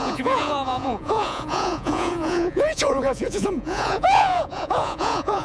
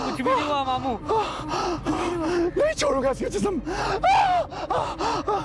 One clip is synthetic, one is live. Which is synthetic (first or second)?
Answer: first